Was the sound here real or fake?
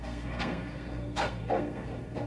fake